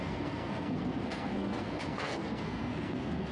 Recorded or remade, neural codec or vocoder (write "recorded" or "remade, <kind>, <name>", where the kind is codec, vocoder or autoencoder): remade, codec, SNAC